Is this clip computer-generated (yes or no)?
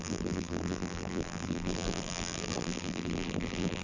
yes